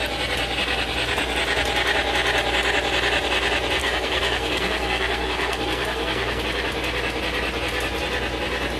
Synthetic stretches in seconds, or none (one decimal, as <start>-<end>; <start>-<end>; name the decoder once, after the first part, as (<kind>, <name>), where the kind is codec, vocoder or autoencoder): 3.8-6.4 (codec, SNAC)